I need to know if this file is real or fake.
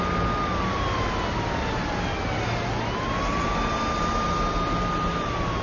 real